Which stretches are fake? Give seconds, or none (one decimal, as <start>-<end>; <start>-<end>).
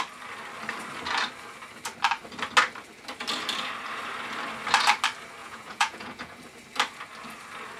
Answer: 5.4-6.4